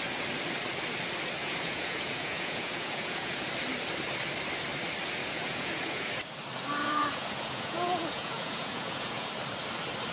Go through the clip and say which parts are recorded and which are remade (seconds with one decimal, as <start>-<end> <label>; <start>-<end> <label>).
0.0-1.4 recorded; 1.4-3.5 remade; 3.5-5.2 recorded; 5.2-6.1 remade; 6.1-6.8 recorded; 6.8-9.3 remade; 9.3-10.1 recorded